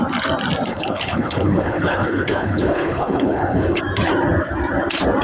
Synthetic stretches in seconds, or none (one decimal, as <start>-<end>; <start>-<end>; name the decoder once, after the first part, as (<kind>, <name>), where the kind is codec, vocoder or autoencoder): 0.7-3.8 (codec, HILCodec)